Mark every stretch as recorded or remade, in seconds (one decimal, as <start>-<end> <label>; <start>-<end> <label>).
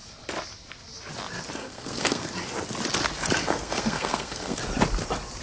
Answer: 0.0-1.6 recorded; 1.6-2.3 remade; 2.3-3.4 recorded; 3.4-4.6 remade; 4.6-5.4 recorded